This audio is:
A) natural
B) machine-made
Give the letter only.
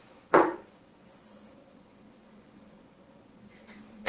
B